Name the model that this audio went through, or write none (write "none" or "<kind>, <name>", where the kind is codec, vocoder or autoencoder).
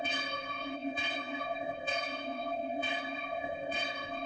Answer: codec, ZipCodec